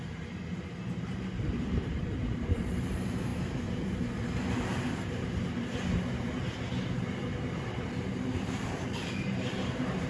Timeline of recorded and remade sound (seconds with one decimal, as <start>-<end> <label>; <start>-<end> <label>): 0.0-6.7 remade; 6.7-7.6 recorded; 7.6-10.1 remade